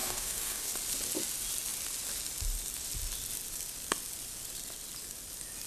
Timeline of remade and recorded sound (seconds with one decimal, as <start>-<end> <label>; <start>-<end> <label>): 0.0-0.7 remade; 0.7-5.7 recorded